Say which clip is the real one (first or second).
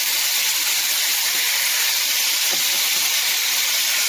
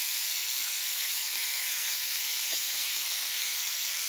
first